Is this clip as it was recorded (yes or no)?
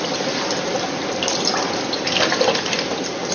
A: yes